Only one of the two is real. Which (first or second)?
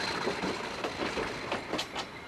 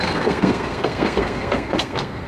first